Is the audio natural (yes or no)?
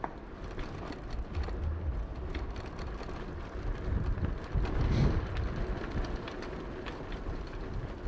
yes